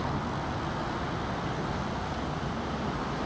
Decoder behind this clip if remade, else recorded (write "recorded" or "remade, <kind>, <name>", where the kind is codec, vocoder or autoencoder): recorded